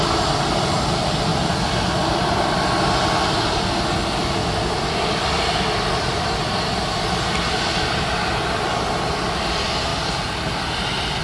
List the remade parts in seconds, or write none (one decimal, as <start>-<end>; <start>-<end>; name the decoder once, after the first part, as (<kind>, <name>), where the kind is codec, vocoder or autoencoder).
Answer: none